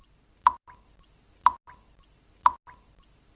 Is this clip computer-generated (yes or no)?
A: no